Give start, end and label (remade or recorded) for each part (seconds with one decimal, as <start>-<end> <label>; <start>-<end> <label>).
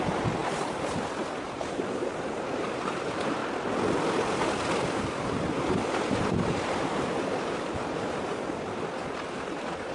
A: 0.0-3.4 remade; 3.4-4.7 recorded; 4.7-9.9 remade